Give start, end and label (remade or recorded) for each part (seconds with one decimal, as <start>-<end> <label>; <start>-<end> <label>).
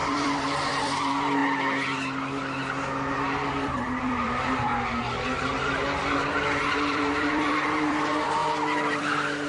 0.0-1.4 remade; 1.4-3.2 recorded; 3.2-4.7 remade; 4.7-6.6 recorded; 6.6-8.4 remade; 8.4-9.0 recorded; 9.0-9.5 remade